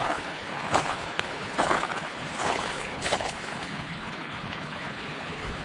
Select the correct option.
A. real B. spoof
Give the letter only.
B